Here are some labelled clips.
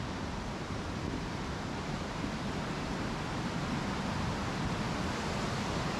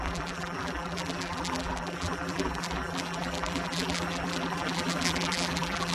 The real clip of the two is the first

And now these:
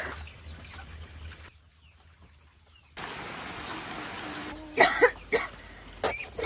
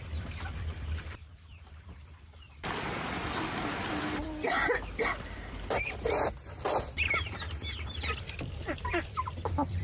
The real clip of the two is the first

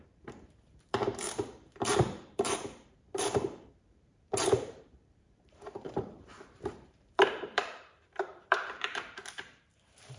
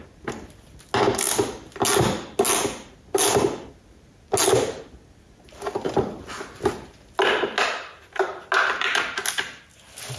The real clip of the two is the second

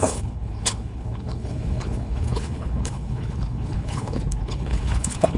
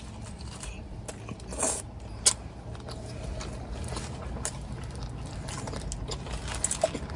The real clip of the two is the second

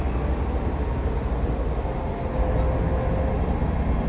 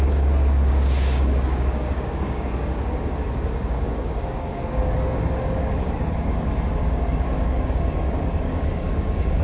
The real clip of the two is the first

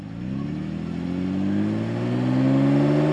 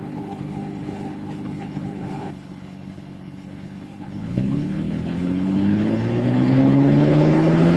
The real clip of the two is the first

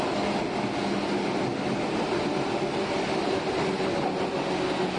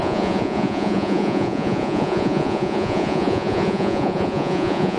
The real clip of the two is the first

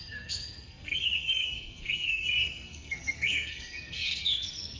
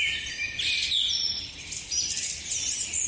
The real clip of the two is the second